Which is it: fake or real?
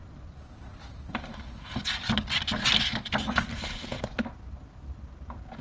real